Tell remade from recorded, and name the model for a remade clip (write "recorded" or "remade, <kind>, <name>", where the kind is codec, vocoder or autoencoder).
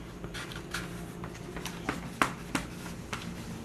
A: recorded